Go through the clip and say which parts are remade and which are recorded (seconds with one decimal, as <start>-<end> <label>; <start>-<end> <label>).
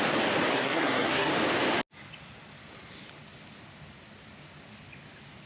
0.0-0.5 recorded; 0.5-1.3 remade; 1.3-5.5 recorded